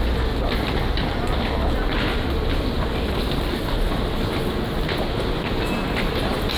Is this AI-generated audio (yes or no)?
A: no